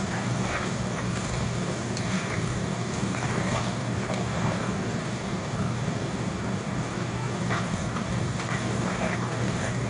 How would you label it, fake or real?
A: fake